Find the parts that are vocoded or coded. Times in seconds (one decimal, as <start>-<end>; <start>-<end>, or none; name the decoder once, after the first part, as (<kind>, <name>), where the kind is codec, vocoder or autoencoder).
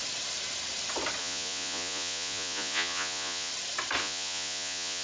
1.2-3.5 (vocoder, Vocos); 4.0-5.0